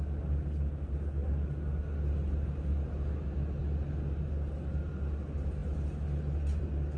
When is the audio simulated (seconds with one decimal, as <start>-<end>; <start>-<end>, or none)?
none

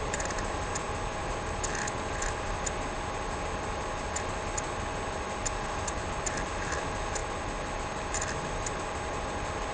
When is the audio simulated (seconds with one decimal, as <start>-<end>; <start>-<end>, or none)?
none